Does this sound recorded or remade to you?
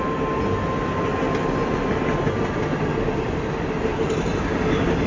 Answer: recorded